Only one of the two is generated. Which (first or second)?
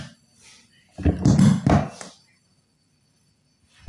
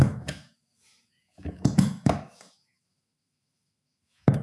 second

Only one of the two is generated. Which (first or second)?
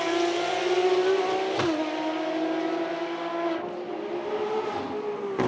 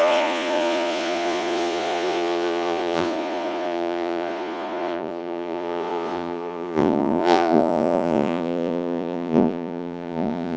second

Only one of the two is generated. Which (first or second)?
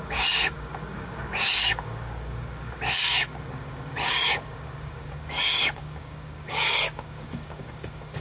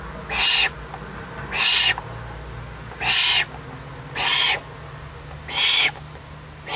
first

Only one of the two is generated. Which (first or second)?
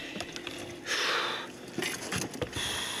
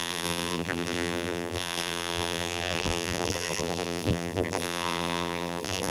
second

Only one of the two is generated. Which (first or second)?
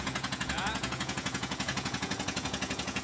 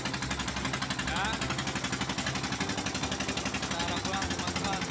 first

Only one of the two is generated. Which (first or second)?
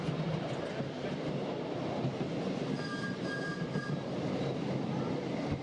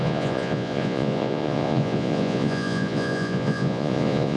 second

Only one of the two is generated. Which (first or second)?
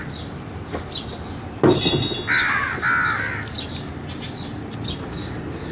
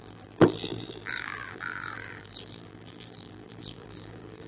second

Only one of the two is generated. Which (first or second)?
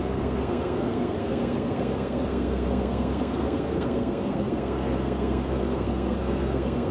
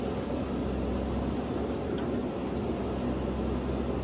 first